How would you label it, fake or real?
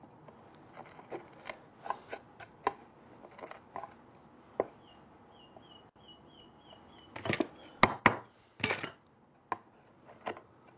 real